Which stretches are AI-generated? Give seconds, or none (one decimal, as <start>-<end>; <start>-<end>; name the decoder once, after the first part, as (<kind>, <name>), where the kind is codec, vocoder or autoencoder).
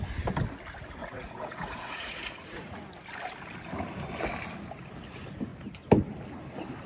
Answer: 1.0-2.8 (vocoder, Vocos)